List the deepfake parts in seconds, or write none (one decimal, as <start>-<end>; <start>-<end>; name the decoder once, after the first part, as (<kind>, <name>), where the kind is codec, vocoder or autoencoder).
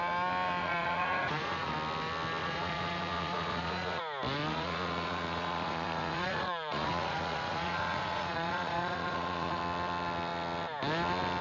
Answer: 0.6-1.7 (vocoder, Vocos); 2.4-4.0; 4.5-9.6